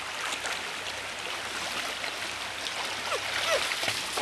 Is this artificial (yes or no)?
no